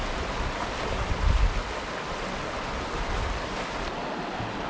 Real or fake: real